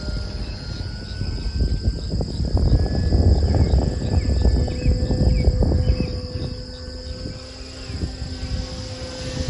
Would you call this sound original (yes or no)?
yes